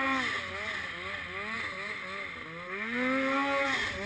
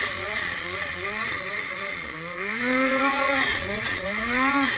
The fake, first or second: second